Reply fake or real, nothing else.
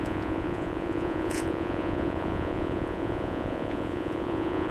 fake